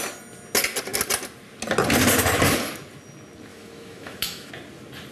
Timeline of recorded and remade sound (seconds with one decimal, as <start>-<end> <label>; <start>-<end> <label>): 0.0-3.5 recorded; 3.5-4.5 remade; 4.5-5.1 recorded